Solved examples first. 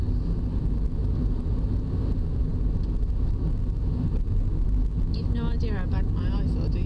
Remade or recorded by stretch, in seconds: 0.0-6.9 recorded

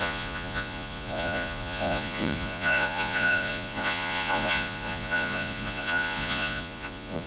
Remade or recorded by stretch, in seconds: 0.0-7.3 remade

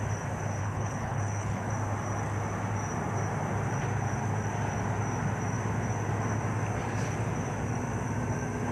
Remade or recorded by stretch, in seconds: 0.0-0.6 recorded; 0.6-1.7 remade; 1.7-8.7 recorded